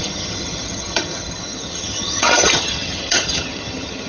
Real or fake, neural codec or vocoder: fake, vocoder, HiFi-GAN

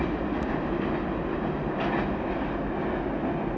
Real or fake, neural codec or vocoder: real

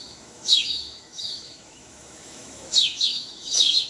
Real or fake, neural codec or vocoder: fake, autoencoder, DAC-VAE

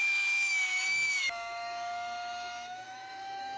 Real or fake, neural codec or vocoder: fake, autoencoder, DAC-VAE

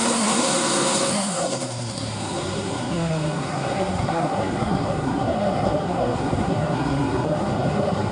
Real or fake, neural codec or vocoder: fake, codec, SNAC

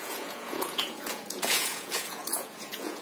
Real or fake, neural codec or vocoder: fake, vocoder, Vocos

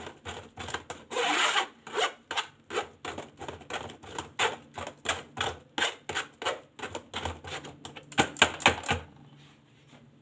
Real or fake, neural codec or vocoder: real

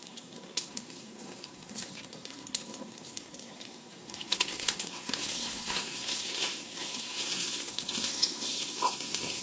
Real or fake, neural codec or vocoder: fake, codec, SNAC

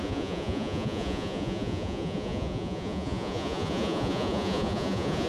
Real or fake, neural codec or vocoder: fake, vocoder, Vocos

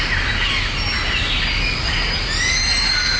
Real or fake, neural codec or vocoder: real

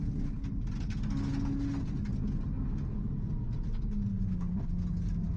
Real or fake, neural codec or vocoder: real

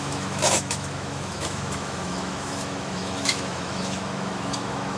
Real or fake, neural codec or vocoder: fake, autoencoder, DAC-VAE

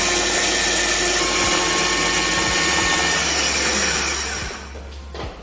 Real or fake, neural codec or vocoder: real